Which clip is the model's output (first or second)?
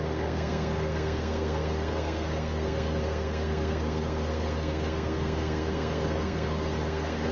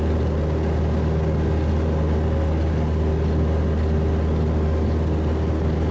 first